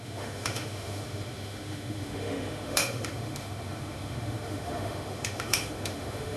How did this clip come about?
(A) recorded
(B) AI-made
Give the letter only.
B